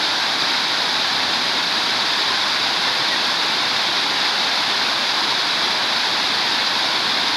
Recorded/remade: remade